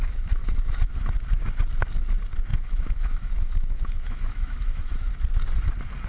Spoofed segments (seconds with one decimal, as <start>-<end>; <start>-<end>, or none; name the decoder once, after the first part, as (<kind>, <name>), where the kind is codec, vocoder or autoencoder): 0.4-0.9 (autoencoder, DAC-VAE); 2.5-5.1